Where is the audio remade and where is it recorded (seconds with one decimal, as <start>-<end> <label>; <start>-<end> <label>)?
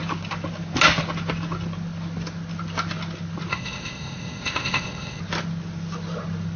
0.0-3.5 recorded; 3.5-5.2 remade; 5.2-6.6 recorded